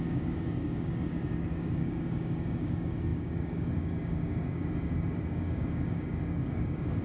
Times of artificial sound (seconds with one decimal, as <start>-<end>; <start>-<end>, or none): 0.0-7.0